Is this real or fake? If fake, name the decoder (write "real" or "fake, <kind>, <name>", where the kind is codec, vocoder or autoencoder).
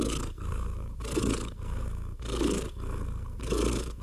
fake, codec, SNAC